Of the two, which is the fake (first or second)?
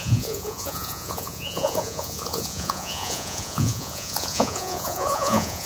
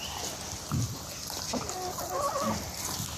first